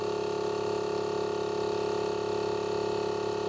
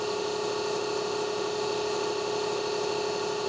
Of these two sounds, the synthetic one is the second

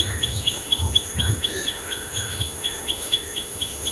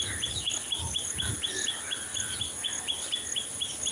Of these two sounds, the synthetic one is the first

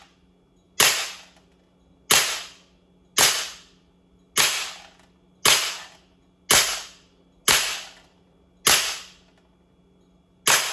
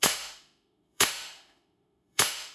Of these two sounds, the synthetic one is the second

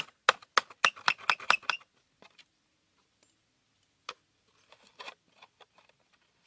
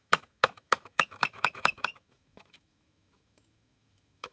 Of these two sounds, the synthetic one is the second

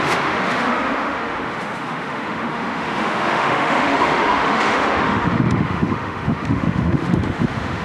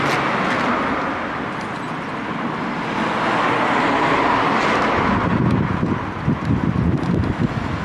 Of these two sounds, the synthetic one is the first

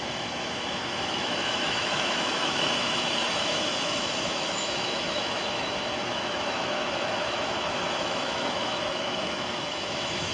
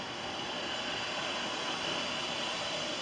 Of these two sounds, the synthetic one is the first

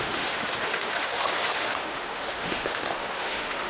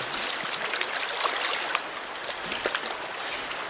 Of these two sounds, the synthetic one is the first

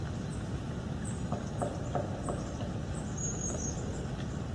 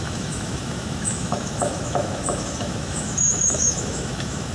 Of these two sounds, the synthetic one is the second